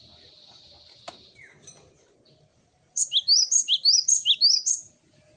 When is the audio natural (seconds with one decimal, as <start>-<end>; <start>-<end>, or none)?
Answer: 0.0-2.5; 3.0-5.4